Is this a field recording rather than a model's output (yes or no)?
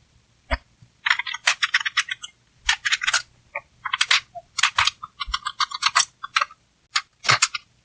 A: yes